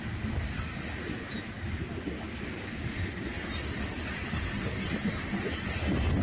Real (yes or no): yes